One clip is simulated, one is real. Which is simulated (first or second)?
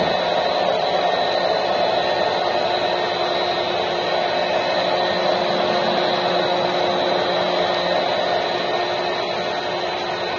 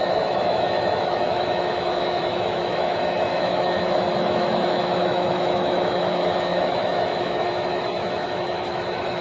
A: second